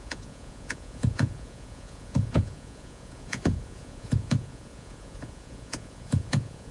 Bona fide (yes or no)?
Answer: no